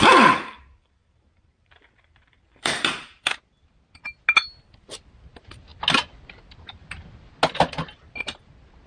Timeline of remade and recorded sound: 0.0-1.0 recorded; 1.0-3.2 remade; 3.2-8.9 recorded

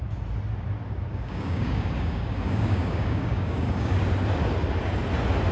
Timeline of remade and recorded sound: 0.0-1.1 recorded; 1.1-4.0 remade; 4.0-5.5 recorded

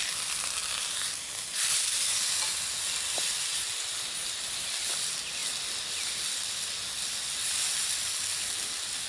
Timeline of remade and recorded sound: 0.0-9.1 recorded

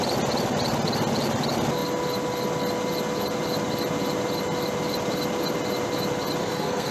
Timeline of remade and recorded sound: 0.0-6.4 recorded; 6.4-6.9 remade